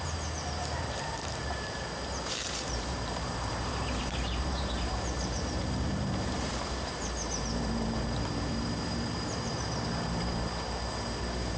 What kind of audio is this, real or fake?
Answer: fake